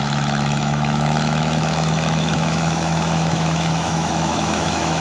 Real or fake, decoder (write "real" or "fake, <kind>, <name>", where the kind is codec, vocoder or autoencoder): fake, autoencoder, DAC-VAE